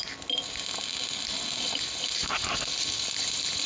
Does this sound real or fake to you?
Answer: real